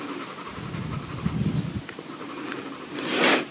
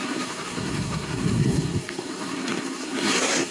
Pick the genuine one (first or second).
first